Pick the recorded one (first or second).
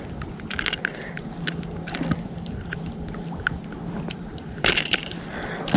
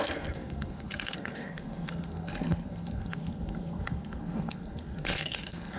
first